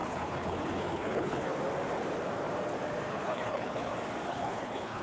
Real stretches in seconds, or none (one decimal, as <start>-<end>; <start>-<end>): 1.6-3.1; 3.9-4.3